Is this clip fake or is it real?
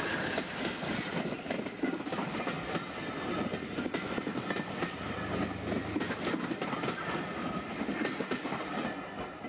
real